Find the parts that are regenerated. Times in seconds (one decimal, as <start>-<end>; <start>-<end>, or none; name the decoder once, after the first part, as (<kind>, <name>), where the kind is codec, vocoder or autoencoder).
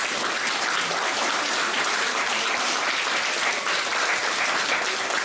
0.0-4.2 (vocoder, BigVGAN v2)